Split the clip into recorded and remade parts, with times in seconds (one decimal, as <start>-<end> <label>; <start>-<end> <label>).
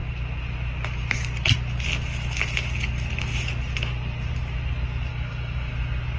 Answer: 0.0-5.1 recorded; 5.1-5.7 remade; 5.7-6.2 recorded